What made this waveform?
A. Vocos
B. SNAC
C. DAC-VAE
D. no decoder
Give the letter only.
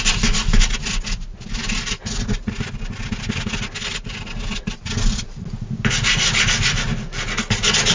D